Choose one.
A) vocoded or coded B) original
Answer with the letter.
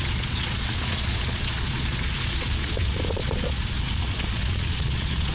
A